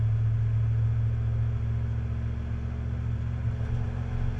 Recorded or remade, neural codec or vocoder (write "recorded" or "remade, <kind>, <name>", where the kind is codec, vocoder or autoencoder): recorded